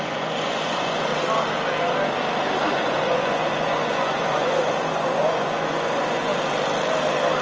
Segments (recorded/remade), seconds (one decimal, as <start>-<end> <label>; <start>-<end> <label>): 0.0-1.1 remade; 1.1-2.7 recorded; 2.7-6.3 remade; 6.3-7.4 recorded